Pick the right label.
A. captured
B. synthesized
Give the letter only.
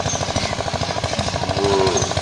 A